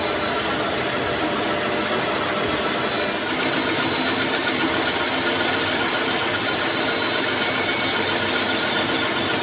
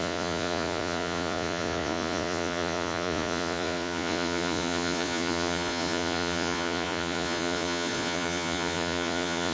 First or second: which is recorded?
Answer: first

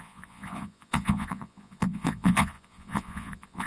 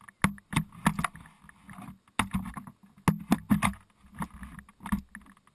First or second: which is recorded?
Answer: second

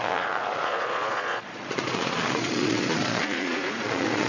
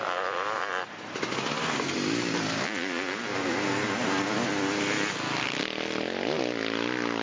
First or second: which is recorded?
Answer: second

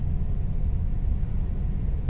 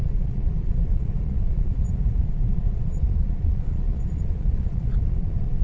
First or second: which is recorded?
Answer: first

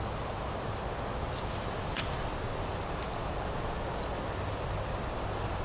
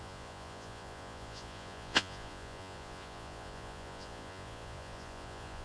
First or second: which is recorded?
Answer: first